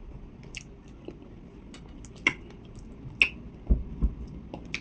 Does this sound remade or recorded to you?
recorded